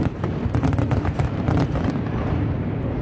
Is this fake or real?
real